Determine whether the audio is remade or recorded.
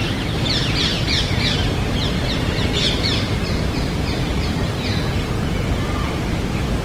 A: recorded